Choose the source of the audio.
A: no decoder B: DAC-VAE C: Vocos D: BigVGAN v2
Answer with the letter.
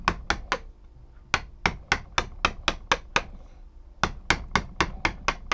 A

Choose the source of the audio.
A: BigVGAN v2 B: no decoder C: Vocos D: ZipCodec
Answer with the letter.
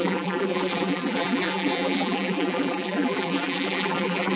A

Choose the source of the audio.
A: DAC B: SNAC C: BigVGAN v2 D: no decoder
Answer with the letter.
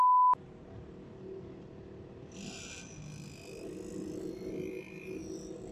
D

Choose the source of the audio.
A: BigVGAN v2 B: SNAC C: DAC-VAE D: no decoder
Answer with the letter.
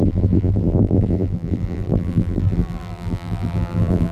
A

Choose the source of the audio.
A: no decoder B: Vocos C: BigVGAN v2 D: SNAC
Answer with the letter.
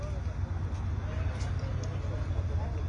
A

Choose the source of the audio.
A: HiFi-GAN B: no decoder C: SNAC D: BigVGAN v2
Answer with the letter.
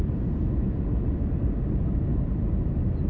D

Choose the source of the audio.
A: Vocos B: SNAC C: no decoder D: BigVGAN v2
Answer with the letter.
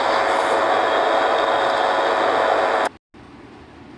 C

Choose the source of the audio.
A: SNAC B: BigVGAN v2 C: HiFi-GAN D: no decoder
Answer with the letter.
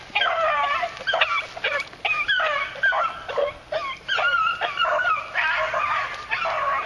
B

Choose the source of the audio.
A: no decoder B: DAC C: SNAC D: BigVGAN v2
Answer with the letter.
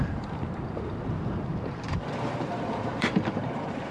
D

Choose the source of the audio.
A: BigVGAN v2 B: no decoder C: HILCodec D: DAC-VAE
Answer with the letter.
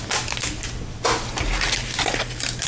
B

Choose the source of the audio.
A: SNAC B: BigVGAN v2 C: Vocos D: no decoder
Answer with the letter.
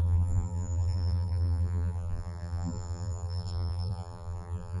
B